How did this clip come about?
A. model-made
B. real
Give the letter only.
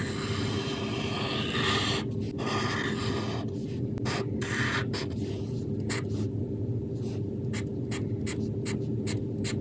B